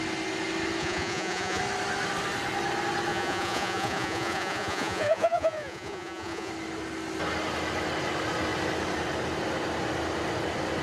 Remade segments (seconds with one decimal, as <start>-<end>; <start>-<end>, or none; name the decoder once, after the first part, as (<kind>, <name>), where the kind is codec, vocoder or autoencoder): 0.8-1.6 (vocoder, Vocos); 3.1-6.5